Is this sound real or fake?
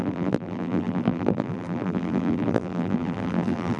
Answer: fake